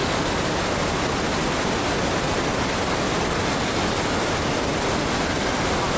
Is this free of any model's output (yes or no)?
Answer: yes